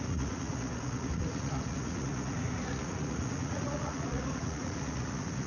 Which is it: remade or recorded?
remade